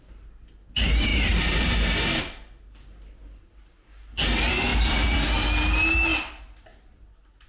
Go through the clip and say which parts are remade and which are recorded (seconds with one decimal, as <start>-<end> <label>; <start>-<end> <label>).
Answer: 0.0-4.7 recorded; 4.7-5.3 remade; 5.3-7.5 recorded